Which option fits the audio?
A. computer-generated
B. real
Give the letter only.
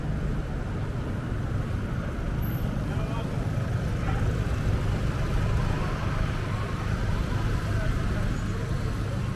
B